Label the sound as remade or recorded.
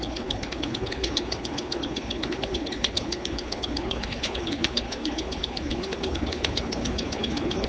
remade